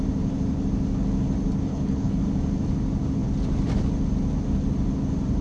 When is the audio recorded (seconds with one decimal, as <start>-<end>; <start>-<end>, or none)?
0.0-1.7; 2.2-5.4